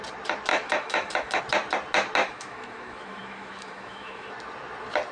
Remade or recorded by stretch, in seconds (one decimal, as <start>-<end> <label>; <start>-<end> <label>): 0.0-0.5 recorded; 0.5-1.4 remade; 1.4-2.2 recorded; 2.2-4.3 remade; 4.3-5.1 recorded